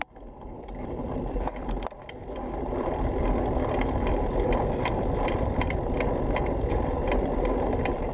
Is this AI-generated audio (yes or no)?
yes